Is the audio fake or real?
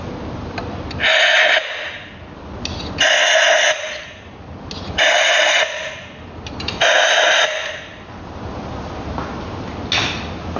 real